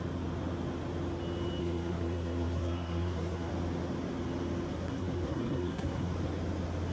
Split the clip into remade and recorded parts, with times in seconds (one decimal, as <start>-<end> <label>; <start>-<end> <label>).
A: 0.0-1.6 recorded; 1.6-3.5 remade; 3.5-4.7 recorded; 4.7-6.1 remade; 6.1-6.9 recorded